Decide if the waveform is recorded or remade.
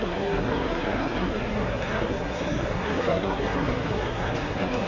remade